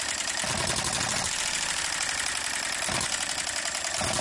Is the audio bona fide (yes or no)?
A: yes